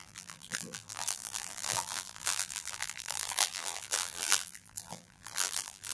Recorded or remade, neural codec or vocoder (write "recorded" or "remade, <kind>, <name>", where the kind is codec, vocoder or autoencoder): remade, vocoder, BigVGAN v2